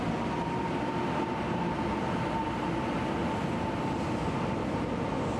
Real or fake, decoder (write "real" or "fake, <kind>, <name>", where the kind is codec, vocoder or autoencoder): real